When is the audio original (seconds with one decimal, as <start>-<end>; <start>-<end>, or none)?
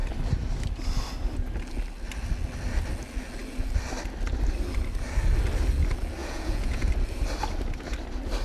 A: 0.0-6.2; 6.9-8.4